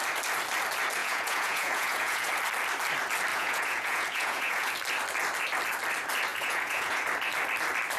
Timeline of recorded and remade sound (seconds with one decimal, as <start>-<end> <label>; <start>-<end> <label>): 0.0-1.0 recorded; 1.0-2.3 remade; 2.3-3.3 recorded; 3.3-4.7 remade; 4.7-6.3 recorded; 6.3-7.0 remade; 7.0-8.0 recorded